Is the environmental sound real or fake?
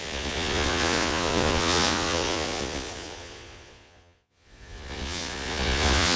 fake